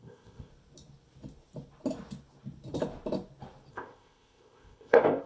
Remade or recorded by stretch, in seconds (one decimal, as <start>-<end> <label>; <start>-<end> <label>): 0.0-0.5 remade; 0.5-3.7 recorded; 3.7-5.3 remade